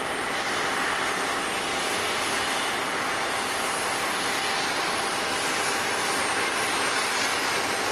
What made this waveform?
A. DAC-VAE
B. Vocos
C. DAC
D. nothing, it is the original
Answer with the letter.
D